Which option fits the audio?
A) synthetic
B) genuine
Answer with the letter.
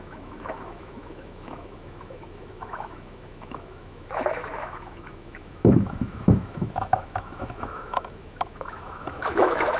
A